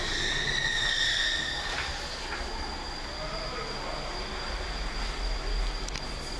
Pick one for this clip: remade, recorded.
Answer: recorded